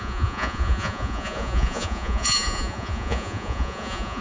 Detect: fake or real fake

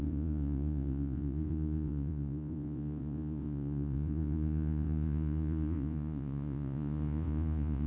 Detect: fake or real fake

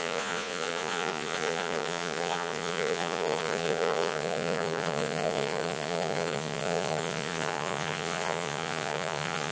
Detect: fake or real fake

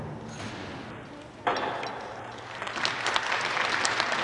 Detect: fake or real real